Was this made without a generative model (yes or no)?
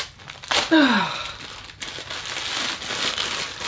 yes